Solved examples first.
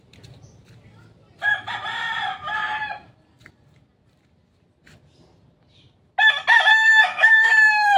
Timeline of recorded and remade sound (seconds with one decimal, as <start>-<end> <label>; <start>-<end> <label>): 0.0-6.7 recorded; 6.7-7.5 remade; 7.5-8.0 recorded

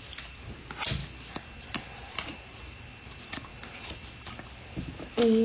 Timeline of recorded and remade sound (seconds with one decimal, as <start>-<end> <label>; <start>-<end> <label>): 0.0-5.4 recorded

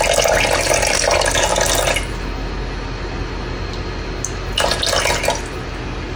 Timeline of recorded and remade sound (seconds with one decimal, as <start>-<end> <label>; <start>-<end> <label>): 0.0-6.2 recorded